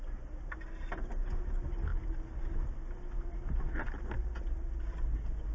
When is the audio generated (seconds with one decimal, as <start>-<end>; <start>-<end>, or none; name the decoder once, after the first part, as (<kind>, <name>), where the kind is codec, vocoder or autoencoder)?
none